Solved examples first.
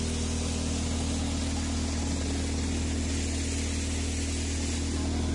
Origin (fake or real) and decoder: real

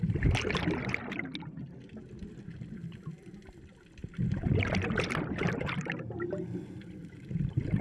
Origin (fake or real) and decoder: real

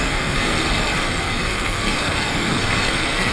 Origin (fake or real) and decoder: fake, codec, SNAC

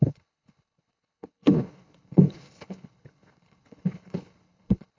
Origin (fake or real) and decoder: fake, codec, HILCodec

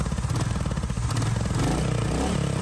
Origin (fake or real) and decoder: real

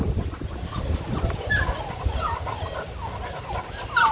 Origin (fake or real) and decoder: fake, vocoder, BigVGAN v2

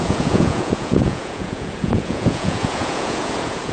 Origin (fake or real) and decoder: fake, vocoder, Vocos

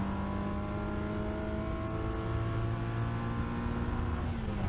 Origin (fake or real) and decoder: real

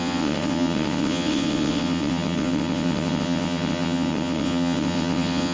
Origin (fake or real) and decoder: fake, vocoder, WaveNeXt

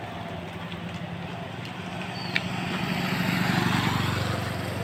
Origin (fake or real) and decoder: real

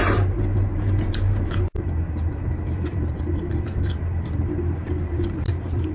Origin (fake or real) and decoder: fake, vocoder, BigVGAN v2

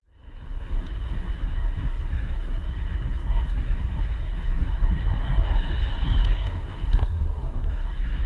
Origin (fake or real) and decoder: fake, codec, SNAC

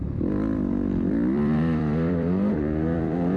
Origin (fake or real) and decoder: fake, vocoder, BigVGAN v2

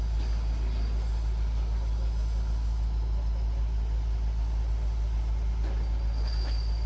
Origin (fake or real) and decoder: real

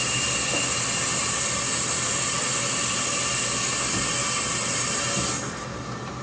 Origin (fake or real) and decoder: real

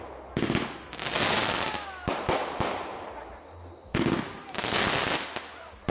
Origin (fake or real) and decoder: real